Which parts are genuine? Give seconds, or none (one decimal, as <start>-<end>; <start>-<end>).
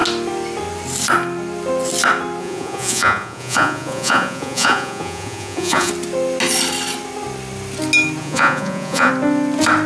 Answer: 0.0-2.4; 5.9-8.2; 9.1-9.9